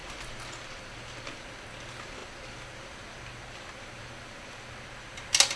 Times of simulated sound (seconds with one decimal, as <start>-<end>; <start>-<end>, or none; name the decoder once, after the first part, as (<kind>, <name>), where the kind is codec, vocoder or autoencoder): none